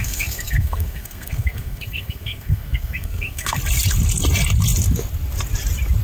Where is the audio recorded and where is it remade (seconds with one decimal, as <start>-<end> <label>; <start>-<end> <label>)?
0.0-3.6 remade; 3.6-6.0 recorded